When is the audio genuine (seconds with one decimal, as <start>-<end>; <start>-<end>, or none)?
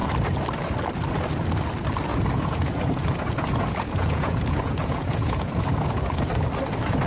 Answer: 0.0-2.1; 6.0-7.1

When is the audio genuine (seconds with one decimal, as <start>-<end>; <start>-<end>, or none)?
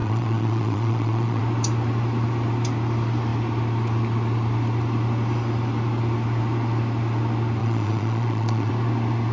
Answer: 1.4-7.6; 8.7-9.3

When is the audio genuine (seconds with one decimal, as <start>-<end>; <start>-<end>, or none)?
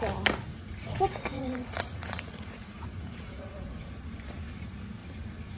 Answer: 0.0-0.5; 3.9-5.6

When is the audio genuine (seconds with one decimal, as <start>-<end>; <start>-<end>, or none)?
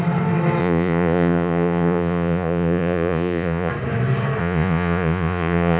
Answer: 0.0-0.6; 3.7-4.4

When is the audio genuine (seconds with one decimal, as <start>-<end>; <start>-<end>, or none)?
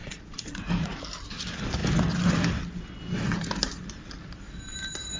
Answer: 1.0-5.2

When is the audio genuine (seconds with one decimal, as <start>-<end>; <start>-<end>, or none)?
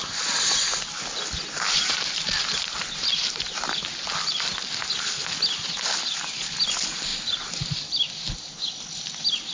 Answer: 0.0-9.5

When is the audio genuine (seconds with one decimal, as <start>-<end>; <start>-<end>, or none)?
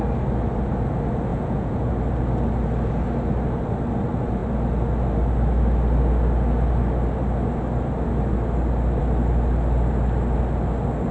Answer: 0.0-1.3; 1.9-11.1